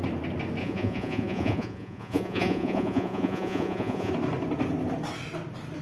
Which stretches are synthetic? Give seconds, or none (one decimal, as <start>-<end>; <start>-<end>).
0.6-4.1